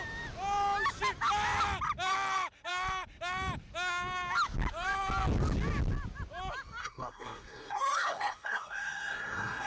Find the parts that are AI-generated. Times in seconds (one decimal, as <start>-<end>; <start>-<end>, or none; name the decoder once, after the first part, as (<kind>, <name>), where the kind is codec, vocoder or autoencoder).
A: 6.8-9.7 (codec, SNAC)